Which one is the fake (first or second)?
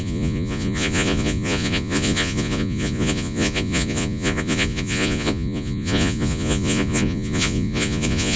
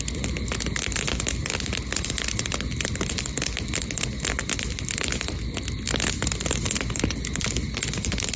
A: first